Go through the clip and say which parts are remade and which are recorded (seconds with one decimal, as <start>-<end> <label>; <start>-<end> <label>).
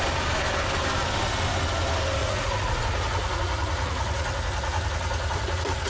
0.0-2.2 recorded; 2.2-5.9 remade